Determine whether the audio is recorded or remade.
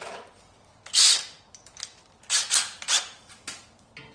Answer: recorded